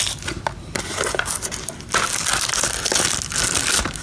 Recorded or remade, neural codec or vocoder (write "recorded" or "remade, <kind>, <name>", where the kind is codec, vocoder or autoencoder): recorded